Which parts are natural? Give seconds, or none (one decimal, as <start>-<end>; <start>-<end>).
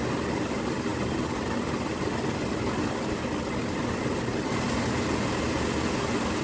0.0-6.4